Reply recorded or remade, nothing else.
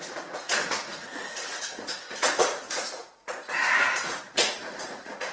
remade